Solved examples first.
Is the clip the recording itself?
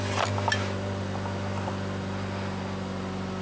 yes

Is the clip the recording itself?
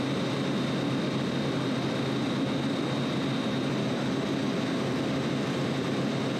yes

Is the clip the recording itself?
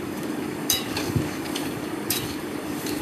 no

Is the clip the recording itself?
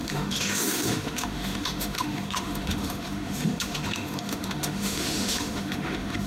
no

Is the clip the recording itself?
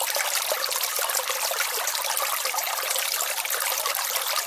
yes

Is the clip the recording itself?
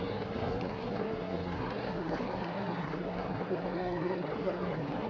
no